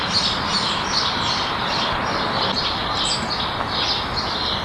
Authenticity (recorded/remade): recorded